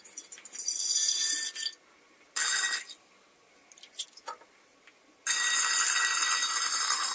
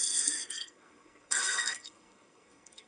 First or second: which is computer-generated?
second